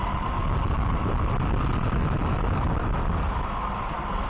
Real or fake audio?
real